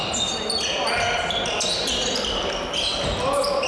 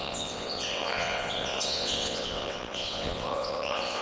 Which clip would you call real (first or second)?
first